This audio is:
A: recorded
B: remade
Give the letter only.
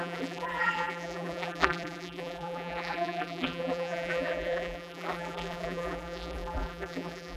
B